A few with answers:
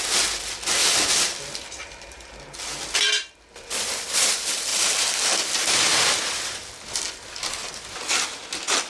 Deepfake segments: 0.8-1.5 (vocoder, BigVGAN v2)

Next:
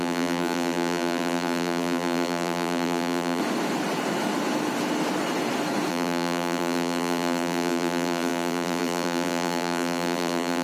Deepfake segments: 0.0-3.4 (vocoder, BigVGAN v2); 5.9-10.6

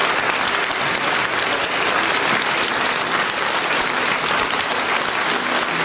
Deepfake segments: 2.7-5.0 (vocoder, BigVGAN v2)

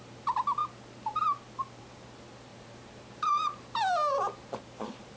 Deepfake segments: 2.5-5.2 (vocoder, BigVGAN v2)

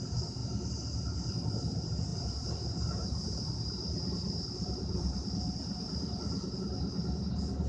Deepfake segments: 0.4-1.3 (vocoder, BigVGAN v2); 2.1-6.6

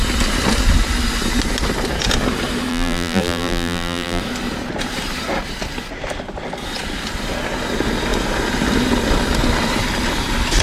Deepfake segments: 2.7-4.2 (vocoder, BigVGAN v2)

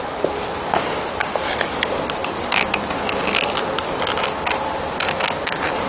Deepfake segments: none

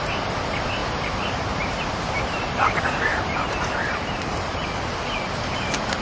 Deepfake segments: 0.8-2.5 (vocoder, BigVGAN v2); 3.1-4.6